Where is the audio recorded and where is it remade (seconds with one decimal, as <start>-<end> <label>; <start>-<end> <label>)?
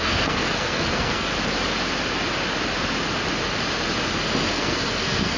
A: 0.0-1.3 remade; 1.3-4.5 recorded; 4.5-5.4 remade